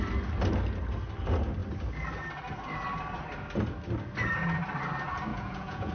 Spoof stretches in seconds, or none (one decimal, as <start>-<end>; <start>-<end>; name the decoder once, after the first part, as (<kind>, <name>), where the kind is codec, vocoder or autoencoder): 5.3-5.9 (vocoder, Vocos)